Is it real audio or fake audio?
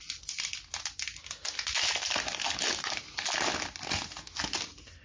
real